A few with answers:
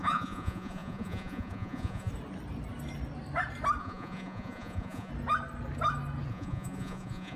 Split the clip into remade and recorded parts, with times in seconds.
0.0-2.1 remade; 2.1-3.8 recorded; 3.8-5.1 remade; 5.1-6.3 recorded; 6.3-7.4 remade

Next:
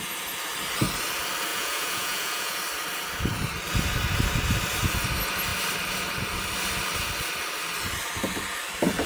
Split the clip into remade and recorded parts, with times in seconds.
0.0-1.5 recorded; 1.5-2.6 remade; 2.6-9.1 recorded

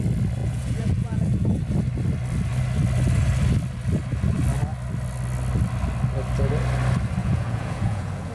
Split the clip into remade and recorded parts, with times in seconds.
0.0-0.4 recorded; 0.4-1.6 remade; 1.6-7.2 recorded; 7.2-8.3 remade

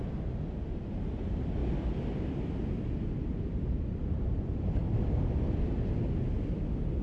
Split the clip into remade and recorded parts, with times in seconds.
0.0-7.0 recorded

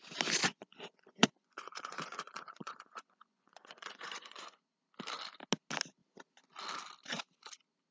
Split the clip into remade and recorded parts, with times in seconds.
0.0-0.4 recorded; 0.4-4.6 remade; 4.6-7.9 recorded

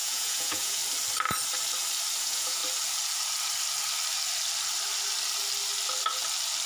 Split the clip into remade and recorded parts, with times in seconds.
0.0-0.8 remade; 0.8-2.2 recorded; 2.2-2.6 remade; 2.6-6.7 recorded

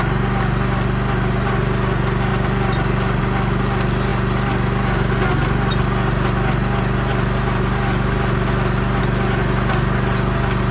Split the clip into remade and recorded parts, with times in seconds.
0.0-10.7 recorded

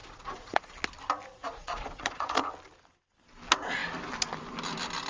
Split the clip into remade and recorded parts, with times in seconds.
0.0-0.8 remade; 0.8-1.4 recorded; 1.4-2.4 remade; 2.4-5.1 recorded